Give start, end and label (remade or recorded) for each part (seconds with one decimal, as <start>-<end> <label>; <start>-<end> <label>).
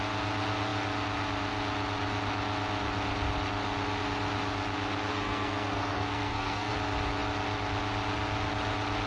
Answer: 0.0-5.1 recorded; 5.1-6.7 remade; 6.7-9.1 recorded